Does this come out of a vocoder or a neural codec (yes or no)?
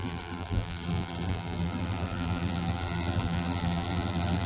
yes